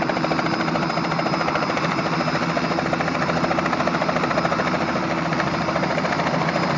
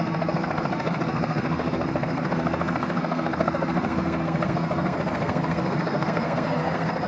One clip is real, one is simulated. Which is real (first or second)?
first